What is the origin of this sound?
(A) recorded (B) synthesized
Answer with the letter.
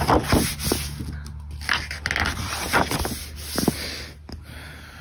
A